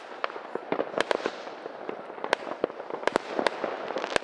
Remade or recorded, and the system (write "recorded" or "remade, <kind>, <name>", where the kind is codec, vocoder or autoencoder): recorded